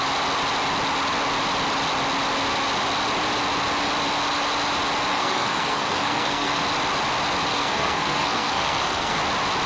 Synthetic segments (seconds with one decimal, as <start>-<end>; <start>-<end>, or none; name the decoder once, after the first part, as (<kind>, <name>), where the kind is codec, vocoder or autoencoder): 5.1-6.6 (codec, SNAC); 7.5-9.2